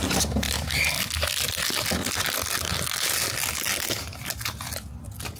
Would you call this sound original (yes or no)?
yes